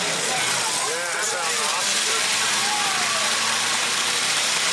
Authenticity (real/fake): fake